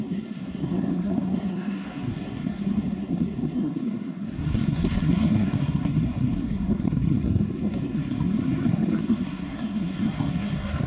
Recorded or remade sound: remade